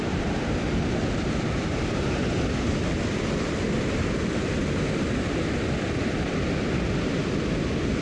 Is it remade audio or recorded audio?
recorded